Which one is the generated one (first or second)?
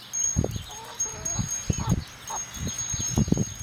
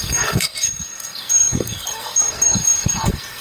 second